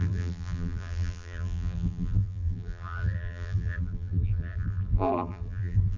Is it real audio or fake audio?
fake